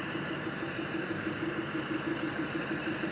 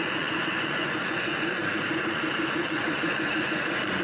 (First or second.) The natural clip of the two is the first